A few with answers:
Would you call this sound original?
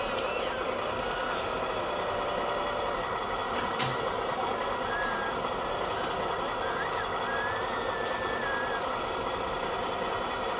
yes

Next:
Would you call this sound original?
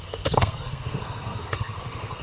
no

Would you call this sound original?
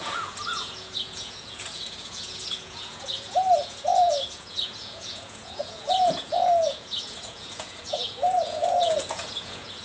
no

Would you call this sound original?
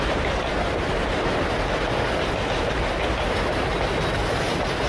yes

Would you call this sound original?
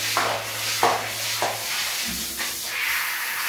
yes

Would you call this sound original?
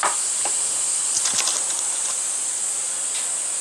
yes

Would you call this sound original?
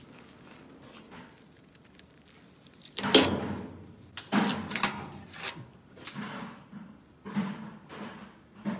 yes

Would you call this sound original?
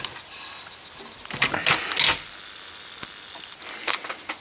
yes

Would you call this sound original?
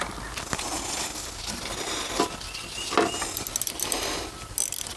yes